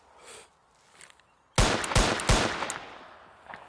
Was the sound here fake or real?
real